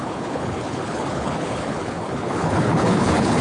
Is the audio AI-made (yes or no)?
yes